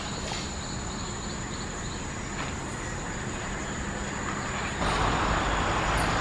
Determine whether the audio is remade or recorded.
recorded